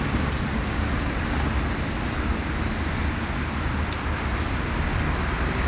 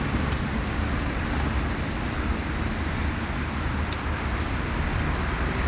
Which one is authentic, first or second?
first